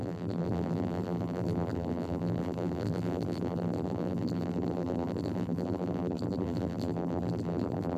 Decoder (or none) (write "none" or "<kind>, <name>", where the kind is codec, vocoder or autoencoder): vocoder, BigVGAN v2